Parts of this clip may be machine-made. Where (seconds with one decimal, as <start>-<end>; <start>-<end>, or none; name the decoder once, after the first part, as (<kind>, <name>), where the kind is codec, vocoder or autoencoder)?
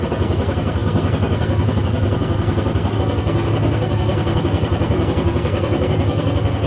0.0-6.7 (codec, SNAC)